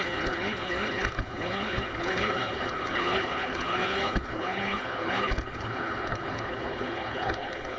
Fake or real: fake